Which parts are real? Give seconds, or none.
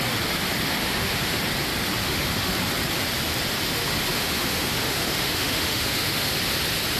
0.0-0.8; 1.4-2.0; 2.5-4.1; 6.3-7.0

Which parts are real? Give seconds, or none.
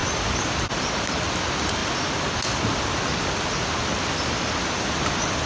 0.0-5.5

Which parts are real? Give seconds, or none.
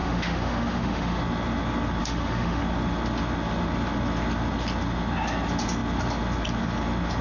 1.2-2.0; 2.6-7.2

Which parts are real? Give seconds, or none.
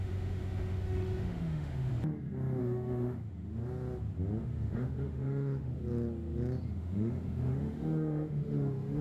1.9-2.6; 3.6-4.4; 5.8-6.7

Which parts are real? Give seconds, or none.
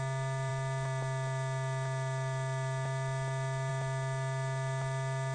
0.0-5.3